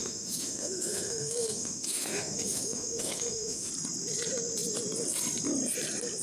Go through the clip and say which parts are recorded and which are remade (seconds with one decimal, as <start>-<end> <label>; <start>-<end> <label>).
0.0-3.7 remade; 3.7-6.2 recorded